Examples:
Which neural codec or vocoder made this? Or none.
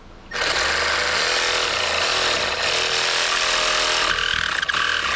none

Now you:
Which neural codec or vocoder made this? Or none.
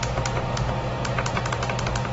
none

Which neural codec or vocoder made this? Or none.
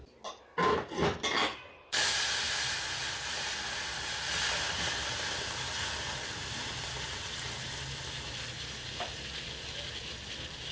none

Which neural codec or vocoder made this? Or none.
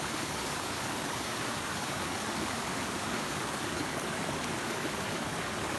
codec, DAC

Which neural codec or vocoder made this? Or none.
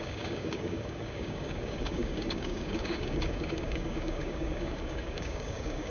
codec, DAC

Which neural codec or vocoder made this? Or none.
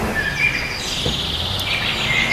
none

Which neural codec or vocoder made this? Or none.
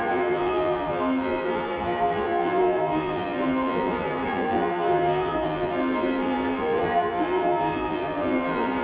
vocoder, BigVGAN v2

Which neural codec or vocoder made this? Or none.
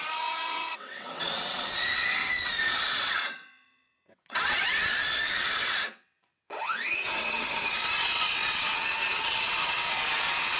vocoder, WaveNeXt